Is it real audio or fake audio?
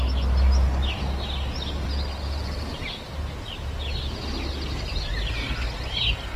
real